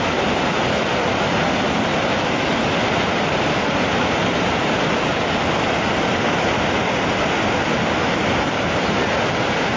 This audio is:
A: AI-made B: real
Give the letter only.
B